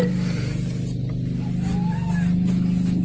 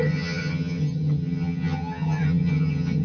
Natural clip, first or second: first